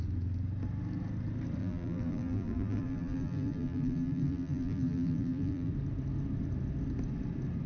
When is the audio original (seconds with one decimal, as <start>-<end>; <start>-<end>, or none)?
0.0-1.6; 5.7-7.7